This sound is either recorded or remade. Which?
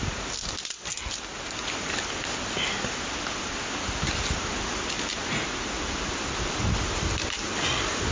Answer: recorded